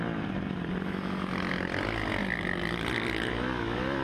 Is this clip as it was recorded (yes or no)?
yes